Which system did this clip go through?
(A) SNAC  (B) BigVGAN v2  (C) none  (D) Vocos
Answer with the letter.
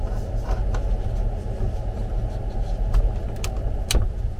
C